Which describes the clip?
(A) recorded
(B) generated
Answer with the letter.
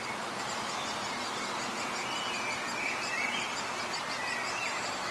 A